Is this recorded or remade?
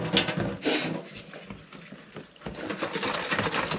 recorded